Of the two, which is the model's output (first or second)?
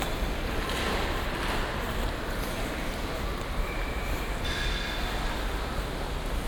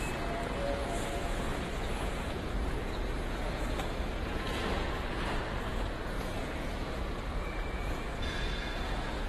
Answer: second